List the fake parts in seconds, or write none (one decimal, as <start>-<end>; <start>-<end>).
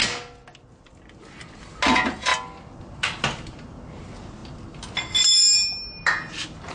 none